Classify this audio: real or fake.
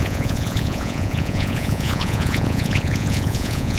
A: fake